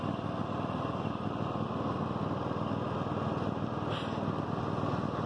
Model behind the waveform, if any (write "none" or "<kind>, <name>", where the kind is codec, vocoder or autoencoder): none